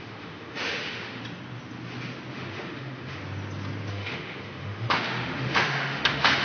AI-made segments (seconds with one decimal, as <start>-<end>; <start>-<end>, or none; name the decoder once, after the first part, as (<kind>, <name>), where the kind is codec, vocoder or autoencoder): 0.0-1.2 (autoencoder, DAC-VAE); 2.3-3.2; 3.9-6.4